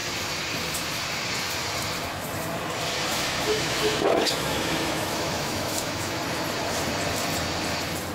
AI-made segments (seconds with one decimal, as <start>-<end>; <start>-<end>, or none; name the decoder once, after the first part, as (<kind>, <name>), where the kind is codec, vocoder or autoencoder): 3.1-6.2 (autoencoder, DAC-VAE)